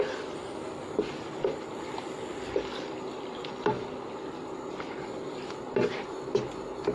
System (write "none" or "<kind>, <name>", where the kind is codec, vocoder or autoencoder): none